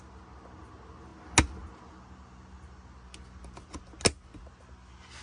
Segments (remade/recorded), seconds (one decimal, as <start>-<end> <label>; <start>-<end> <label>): 0.0-5.2 recorded

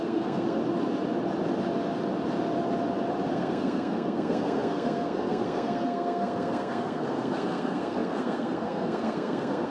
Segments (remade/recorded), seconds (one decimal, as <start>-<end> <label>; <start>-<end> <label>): 0.0-0.6 remade; 0.6-3.3 recorded; 3.3-9.7 remade

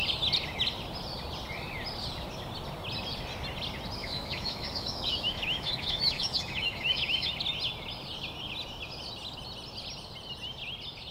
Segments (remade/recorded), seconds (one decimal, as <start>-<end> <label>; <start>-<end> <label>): 0.0-4.0 recorded; 4.0-7.3 remade; 7.3-11.1 recorded

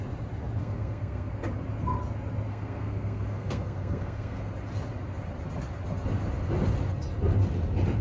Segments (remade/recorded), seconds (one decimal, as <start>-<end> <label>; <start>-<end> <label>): 0.0-0.6 recorded; 0.6-1.3 remade; 1.3-2.5 recorded; 2.5-4.5 remade; 4.5-8.0 recorded

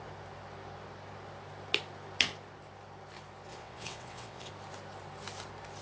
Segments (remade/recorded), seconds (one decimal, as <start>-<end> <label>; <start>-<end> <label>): 0.0-3.5 recorded; 3.5-4.5 remade; 4.5-5.8 recorded

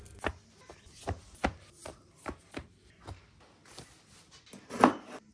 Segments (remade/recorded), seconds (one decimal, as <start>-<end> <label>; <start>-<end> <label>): 0.0-5.3 recorded

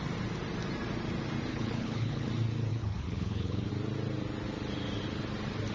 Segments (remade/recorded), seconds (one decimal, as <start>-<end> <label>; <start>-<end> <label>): 0.0-1.5 recorded; 1.5-2.3 remade; 2.3-2.7 recorded; 2.7-3.7 remade; 3.7-5.7 recorded